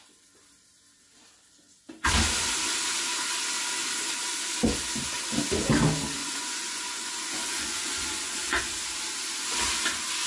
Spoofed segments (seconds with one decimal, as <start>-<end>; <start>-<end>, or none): 6.2-8.6